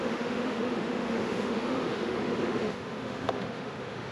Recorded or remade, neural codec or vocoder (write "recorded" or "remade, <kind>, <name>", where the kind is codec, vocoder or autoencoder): remade, autoencoder, DAC-VAE